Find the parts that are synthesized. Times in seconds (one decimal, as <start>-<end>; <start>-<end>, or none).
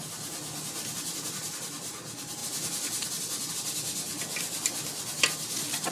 none